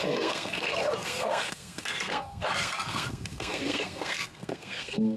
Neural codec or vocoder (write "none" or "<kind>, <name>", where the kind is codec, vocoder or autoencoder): codec, SNAC